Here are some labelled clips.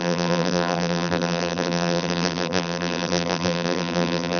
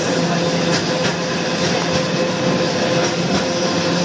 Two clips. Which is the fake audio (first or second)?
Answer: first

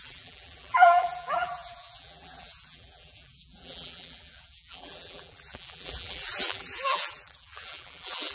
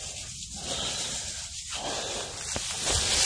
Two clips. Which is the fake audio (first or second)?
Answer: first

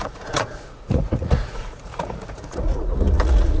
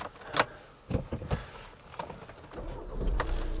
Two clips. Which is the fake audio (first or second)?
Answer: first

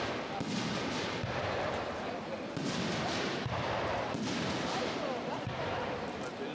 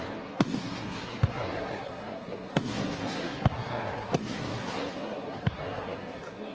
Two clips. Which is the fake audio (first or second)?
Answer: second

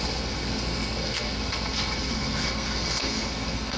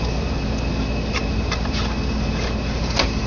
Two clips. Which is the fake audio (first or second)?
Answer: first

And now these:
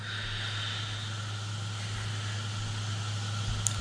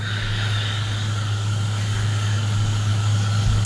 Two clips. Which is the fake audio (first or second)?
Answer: second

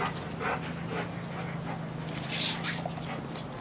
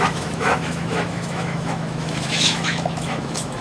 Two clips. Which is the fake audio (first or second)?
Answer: second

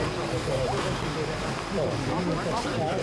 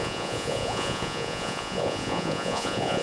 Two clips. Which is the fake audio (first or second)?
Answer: second